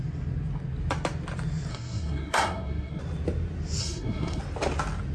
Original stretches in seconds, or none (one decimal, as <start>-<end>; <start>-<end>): 0.0-1.7; 3.0-3.8; 4.4-5.1